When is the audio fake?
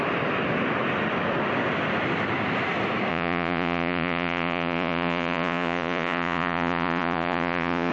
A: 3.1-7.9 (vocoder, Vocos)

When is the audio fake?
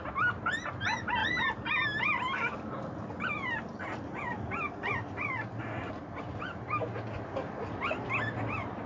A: none